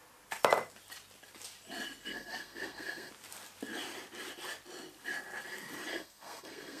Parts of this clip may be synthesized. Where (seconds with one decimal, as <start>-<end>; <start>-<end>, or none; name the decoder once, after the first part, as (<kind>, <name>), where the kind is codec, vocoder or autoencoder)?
2.1-3.1 (codec, SNAC); 5.9-6.8